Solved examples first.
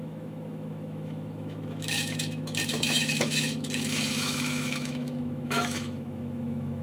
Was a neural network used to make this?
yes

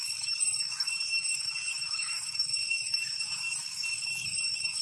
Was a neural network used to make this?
yes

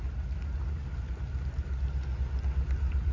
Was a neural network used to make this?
no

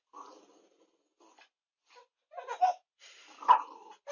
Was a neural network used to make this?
no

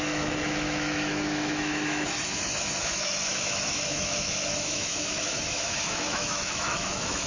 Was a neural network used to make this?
yes